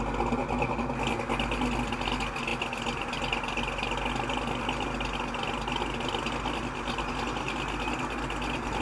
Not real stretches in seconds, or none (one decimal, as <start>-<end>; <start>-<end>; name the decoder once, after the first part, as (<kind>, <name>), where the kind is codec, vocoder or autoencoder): none